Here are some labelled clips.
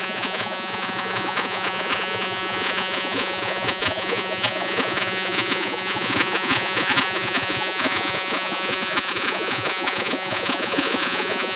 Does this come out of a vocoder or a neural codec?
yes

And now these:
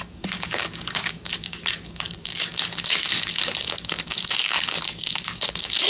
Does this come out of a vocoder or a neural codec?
yes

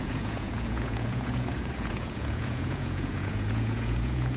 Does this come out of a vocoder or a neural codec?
yes